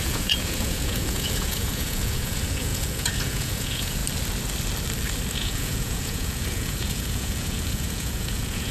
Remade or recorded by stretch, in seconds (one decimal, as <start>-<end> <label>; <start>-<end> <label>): 0.0-4.0 remade; 4.0-5.3 recorded; 5.3-8.7 remade